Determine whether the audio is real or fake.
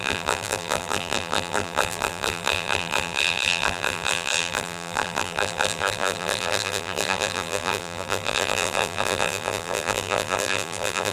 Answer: fake